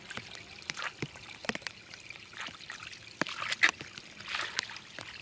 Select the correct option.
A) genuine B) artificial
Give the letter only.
A